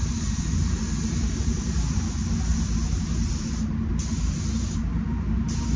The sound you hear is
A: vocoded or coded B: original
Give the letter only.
A